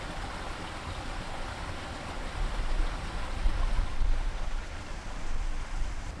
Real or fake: real